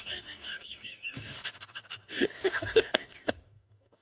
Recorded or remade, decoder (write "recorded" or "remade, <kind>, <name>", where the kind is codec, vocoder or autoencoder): remade, codec, DAC